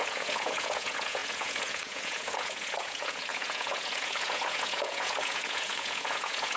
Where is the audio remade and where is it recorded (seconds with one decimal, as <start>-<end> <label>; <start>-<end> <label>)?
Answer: 0.0-6.6 remade